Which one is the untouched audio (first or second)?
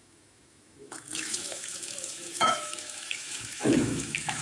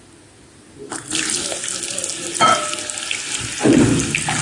second